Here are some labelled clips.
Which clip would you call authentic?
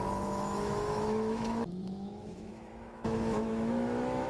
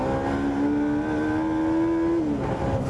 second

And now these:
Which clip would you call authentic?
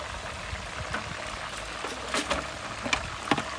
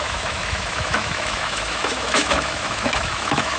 first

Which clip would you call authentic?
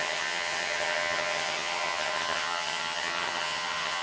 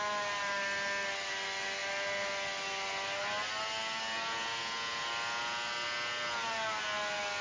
second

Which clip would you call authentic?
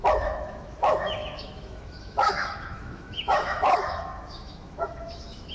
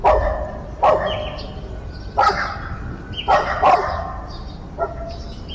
second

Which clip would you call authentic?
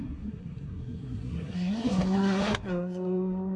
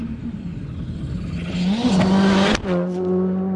second